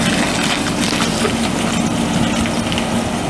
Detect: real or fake real